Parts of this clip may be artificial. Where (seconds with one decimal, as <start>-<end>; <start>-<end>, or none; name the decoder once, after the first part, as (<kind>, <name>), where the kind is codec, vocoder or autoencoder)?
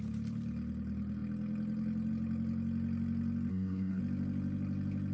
3.5-4.0 (codec, SNAC)